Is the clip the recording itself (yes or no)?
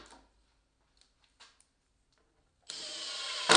yes